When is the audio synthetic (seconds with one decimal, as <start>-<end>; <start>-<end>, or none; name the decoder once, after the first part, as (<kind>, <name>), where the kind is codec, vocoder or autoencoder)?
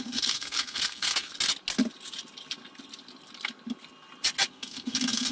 0.0-1.3 (codec, SNAC); 4.5-5.3